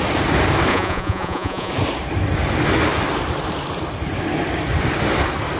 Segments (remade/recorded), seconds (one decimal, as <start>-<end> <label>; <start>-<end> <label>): 0.0-0.7 recorded; 0.7-1.7 remade; 1.7-5.6 recorded